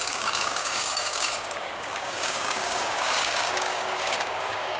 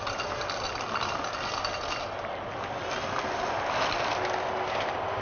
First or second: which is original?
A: second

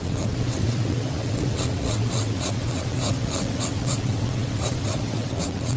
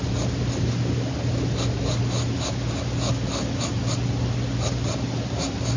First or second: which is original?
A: second